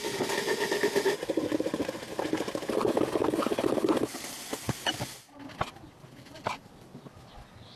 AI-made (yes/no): no